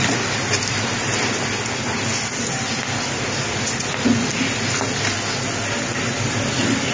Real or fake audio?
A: real